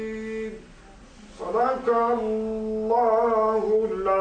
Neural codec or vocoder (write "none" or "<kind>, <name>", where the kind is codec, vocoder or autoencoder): none